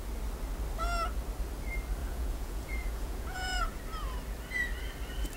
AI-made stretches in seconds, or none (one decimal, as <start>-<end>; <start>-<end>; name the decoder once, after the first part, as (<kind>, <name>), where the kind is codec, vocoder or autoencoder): 2.0-3.8 (vocoder, Vocos)